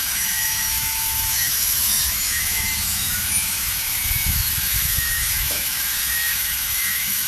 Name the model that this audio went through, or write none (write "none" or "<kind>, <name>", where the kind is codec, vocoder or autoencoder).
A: autoencoder, DAC-VAE